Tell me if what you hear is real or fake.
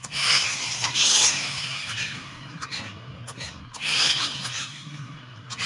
fake